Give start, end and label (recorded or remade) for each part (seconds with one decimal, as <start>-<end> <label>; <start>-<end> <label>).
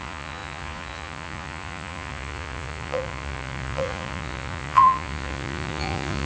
0.0-6.2 remade